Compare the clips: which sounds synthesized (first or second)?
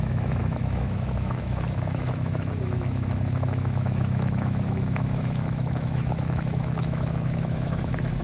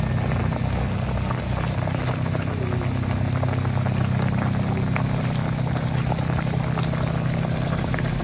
first